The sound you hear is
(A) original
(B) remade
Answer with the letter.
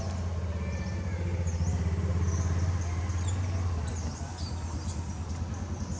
A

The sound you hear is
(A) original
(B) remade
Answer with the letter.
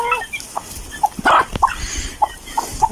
A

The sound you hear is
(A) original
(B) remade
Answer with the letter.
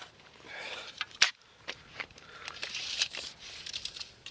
B